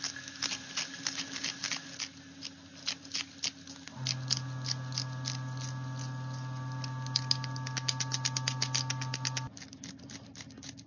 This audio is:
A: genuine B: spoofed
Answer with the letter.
A